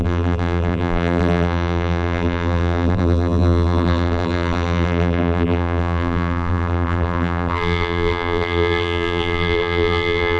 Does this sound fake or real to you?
fake